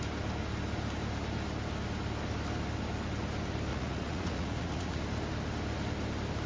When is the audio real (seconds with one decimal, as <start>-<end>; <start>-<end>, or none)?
0.0-3.7; 5.0-6.5